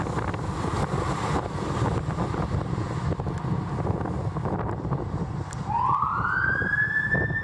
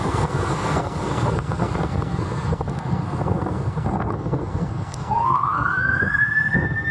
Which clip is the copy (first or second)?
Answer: second